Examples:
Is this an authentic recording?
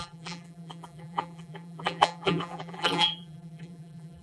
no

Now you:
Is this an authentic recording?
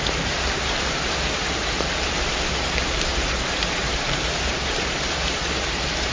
no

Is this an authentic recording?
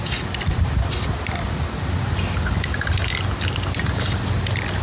yes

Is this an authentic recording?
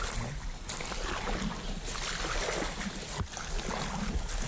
yes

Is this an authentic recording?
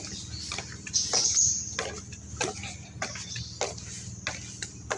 yes